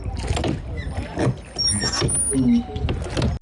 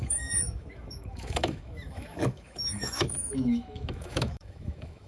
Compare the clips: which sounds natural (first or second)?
first